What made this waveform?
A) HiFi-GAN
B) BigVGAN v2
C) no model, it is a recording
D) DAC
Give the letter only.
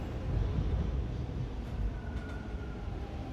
C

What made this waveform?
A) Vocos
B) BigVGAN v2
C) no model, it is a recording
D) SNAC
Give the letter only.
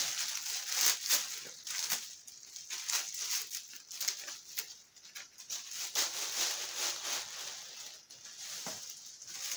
C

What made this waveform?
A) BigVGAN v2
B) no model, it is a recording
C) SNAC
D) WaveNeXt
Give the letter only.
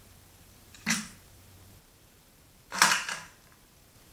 A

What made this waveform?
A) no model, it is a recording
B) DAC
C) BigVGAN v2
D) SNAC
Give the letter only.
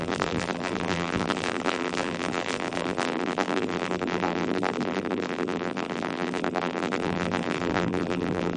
C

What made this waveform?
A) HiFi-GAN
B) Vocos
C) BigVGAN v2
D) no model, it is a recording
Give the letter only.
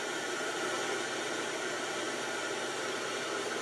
C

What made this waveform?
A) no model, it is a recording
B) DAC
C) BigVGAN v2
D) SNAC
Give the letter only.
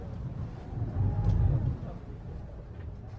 C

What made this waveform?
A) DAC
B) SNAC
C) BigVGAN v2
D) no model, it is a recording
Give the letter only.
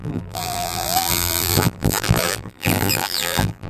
C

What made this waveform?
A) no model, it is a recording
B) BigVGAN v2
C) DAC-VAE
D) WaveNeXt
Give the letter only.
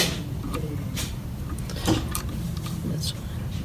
B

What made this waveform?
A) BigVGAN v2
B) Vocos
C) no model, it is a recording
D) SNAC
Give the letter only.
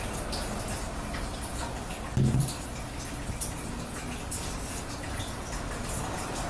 C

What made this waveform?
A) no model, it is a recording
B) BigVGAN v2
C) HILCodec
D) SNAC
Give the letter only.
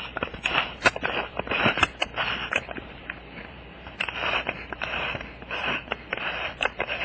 B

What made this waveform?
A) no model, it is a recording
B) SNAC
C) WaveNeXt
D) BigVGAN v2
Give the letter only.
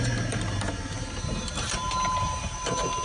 D